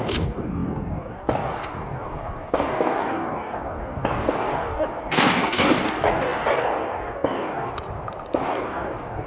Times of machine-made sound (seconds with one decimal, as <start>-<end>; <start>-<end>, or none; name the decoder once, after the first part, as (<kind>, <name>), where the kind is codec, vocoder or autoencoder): 0.0-7.7 (codec, DAC); 8.4-9.3